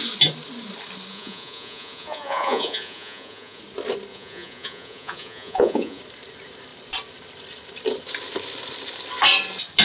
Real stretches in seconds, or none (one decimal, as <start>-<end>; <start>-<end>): 0.0-1.1; 3.6-4.1; 6.0-9.8